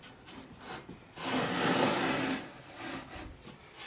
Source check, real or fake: real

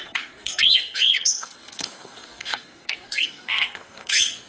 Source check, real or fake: fake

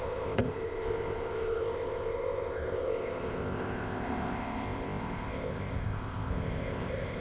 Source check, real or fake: fake